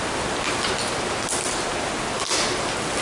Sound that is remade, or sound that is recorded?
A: recorded